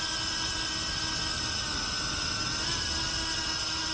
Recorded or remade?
recorded